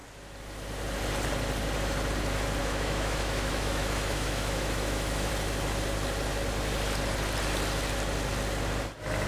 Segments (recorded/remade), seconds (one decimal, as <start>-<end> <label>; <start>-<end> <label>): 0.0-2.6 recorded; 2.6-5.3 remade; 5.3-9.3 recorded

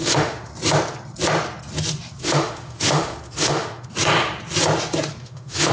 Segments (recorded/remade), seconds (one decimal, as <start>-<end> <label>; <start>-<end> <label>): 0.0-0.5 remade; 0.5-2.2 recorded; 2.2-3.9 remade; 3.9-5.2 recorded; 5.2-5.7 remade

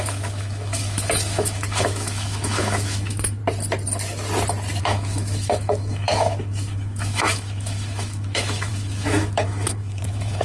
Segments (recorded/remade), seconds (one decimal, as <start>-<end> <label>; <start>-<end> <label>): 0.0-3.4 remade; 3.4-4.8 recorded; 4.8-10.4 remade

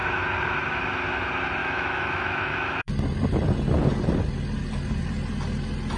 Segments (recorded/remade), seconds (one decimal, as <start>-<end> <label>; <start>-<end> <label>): 0.0-1.6 recorded; 1.6-2.9 remade; 2.9-6.0 recorded